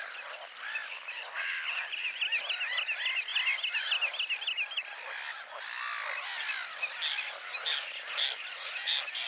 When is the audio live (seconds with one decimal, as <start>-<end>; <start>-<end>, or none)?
0.0-9.3